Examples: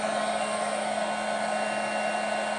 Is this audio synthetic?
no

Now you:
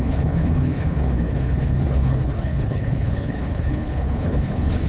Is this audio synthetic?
yes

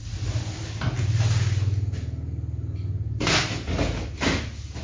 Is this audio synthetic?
no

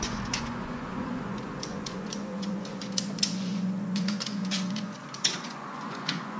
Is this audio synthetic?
yes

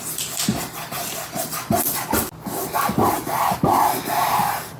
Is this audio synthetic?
no